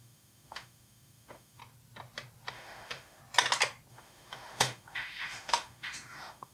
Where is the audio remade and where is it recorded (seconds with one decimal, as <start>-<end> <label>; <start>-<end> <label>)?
0.0-1.6 remade; 1.6-2.5 recorded; 2.5-3.2 remade; 3.2-3.9 recorded; 3.9-6.5 remade

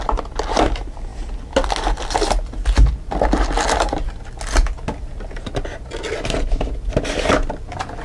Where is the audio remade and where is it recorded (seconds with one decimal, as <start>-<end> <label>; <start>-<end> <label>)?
0.0-8.0 recorded

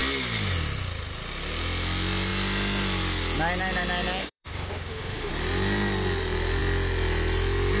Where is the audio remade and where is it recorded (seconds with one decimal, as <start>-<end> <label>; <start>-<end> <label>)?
0.0-4.2 recorded; 4.2-5.3 remade; 5.3-7.8 recorded

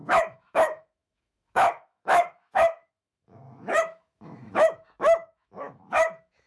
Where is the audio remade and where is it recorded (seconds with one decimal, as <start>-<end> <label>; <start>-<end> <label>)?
0.0-6.5 remade

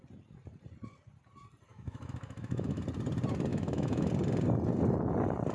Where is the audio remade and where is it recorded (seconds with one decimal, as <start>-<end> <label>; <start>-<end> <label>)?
0.0-1.7 recorded; 1.7-2.8 remade; 2.8-3.5 recorded; 3.5-4.1 remade; 4.1-5.5 recorded